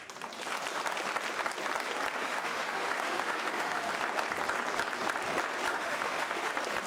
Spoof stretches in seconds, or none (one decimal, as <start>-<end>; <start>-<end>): 2.2-3.9; 5.7-6.5